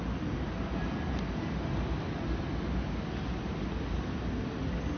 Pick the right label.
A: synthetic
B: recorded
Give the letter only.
B